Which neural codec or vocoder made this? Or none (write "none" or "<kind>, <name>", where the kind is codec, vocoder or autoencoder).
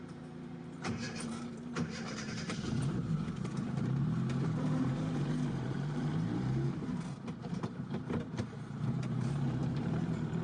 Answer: vocoder, BigVGAN v2